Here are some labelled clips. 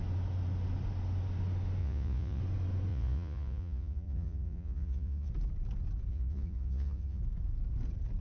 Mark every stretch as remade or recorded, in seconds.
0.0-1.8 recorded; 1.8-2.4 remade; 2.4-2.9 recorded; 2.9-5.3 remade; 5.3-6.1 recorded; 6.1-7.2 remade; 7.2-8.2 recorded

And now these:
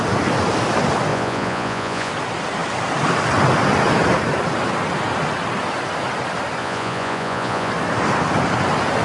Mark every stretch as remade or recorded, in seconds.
0.0-1.1 recorded; 1.1-2.1 remade; 2.1-6.6 recorded; 6.6-7.7 remade; 7.7-9.0 recorded

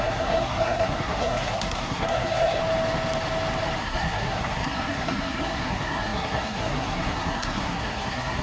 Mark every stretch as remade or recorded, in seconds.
0.0-2.6 remade; 2.6-3.8 recorded; 3.8-8.4 remade

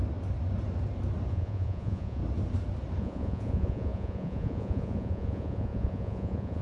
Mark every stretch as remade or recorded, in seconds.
0.0-1.3 recorded; 1.3-2.2 remade; 2.2-3.0 recorded; 3.0-6.6 remade

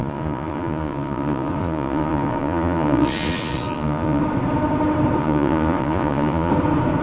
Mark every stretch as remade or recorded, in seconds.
0.0-4.2 remade; 4.2-5.2 recorded; 5.2-6.5 remade; 6.5-7.0 recorded

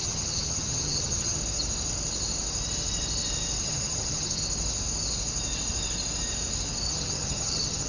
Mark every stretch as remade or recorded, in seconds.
0.0-1.4 remade; 1.4-3.6 recorded; 3.6-4.4 remade; 4.4-6.9 recorded; 6.9-7.9 remade

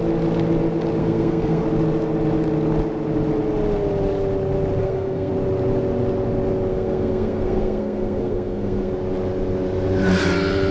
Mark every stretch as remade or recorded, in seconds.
0.0-1.0 recorded; 1.0-1.6 remade; 1.6-4.8 recorded; 4.8-5.3 remade; 5.3-6.7 recorded; 6.7-8.9 remade; 8.9-10.7 recorded